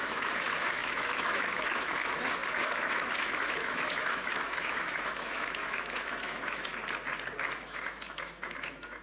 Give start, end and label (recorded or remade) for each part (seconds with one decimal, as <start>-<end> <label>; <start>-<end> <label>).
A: 0.0-6.7 remade; 6.7-7.6 recorded; 7.6-9.0 remade